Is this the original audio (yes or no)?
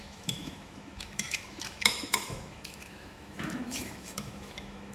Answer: no